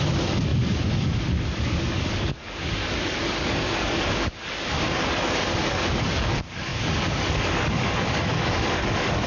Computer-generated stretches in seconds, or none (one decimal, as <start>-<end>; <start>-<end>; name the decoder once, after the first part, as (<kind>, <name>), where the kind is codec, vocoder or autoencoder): 0.0-9.3 (codec, DAC)